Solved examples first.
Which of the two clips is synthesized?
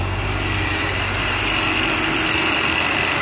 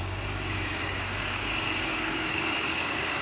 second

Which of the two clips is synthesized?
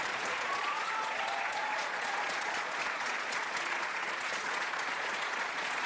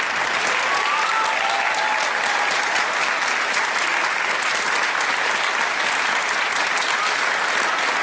first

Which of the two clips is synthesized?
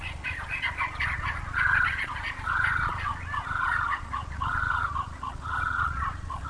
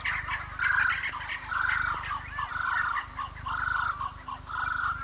first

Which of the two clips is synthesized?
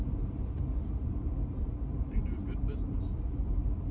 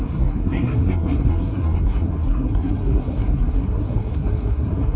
second